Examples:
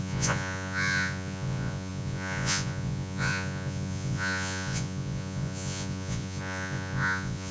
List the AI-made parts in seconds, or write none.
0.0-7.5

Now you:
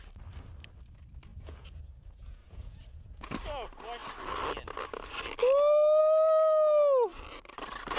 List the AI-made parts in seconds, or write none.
1.3-3.3

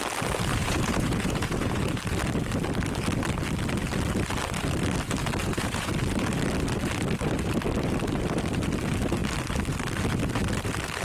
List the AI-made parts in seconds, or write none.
0.6-1.8; 5.4-5.9

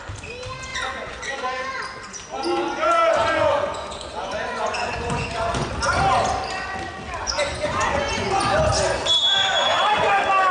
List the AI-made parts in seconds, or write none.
0.7-1.3; 3.5-5.7; 7.2-8.7

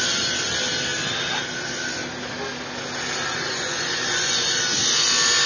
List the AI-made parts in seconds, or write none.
3.3-4.6